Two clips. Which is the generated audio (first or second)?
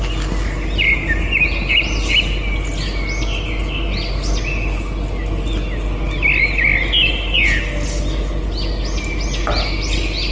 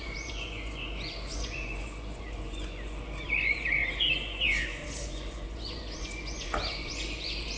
second